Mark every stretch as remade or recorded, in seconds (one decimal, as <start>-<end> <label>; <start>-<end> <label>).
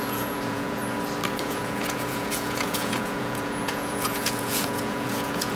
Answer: 0.0-0.8 remade; 0.8-1.4 recorded; 1.4-5.6 remade